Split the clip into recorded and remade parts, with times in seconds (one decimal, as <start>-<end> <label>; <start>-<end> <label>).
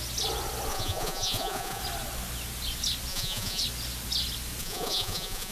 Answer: 0.0-0.7 recorded; 0.7-1.8 remade; 1.8-3.1 recorded; 3.1-3.6 remade; 3.6-4.6 recorded; 4.6-5.5 remade